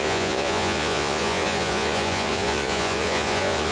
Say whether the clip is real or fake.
fake